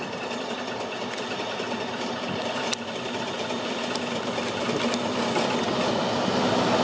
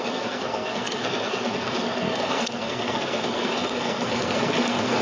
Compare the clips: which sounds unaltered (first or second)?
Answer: first